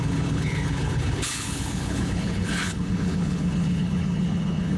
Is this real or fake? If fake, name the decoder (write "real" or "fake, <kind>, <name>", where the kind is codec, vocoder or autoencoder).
fake, codec, HILCodec